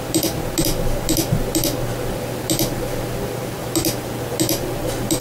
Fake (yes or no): no